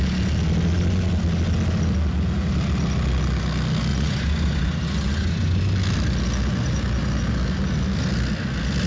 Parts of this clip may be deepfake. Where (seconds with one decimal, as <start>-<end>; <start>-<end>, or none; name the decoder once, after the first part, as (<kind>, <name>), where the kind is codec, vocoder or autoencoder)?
3.9-5.6 (vocoder, Vocos)